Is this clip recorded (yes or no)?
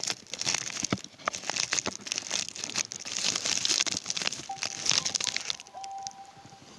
yes